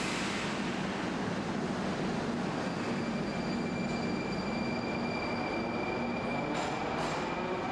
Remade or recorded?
recorded